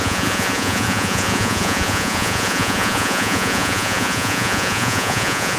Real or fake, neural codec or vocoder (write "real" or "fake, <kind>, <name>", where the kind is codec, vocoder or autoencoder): fake, vocoder, Vocos